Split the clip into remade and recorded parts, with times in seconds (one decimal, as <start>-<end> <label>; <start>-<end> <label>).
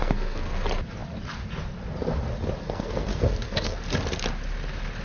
0.0-0.6 remade; 0.6-2.6 recorded; 2.6-3.8 remade; 3.8-5.0 recorded